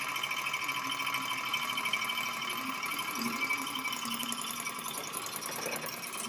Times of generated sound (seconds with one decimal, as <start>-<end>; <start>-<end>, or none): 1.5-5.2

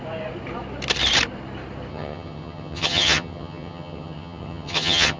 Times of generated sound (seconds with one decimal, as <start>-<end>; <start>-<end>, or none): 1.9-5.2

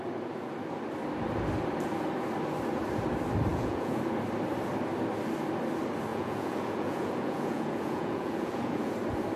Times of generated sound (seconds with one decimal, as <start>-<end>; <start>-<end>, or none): 3.5-4.0; 6.1-8.9

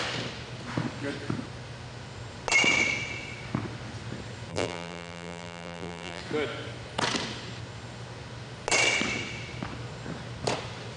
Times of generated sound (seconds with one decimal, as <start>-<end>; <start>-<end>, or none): 4.5-6.2